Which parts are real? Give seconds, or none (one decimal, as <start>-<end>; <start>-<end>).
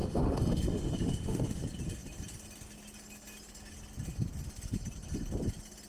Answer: 1.6-5.9